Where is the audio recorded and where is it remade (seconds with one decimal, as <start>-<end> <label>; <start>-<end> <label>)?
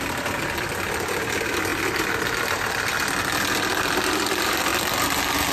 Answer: 0.0-4.7 remade; 4.7-5.5 recorded